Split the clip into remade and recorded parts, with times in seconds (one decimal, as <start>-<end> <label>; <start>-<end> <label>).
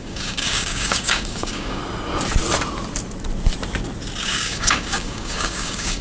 0.0-1.8 remade; 1.8-4.2 recorded; 4.2-6.0 remade